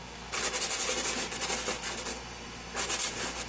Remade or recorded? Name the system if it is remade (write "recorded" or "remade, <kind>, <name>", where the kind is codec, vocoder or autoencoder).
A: recorded